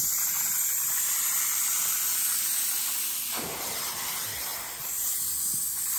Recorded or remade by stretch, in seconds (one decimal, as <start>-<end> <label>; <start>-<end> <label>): 0.0-4.5 recorded; 4.5-5.2 remade; 5.2-6.0 recorded